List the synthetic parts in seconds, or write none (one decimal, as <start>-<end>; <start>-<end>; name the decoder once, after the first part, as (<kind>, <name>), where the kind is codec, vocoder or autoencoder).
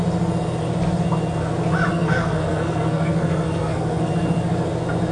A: 1.9-4.1 (codec, SNAC)